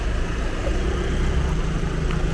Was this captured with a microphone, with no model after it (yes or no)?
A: yes